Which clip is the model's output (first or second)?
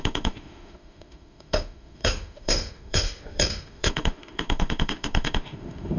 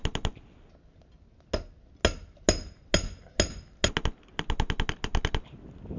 first